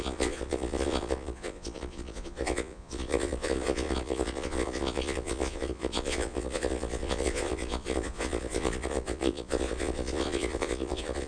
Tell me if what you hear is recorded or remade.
remade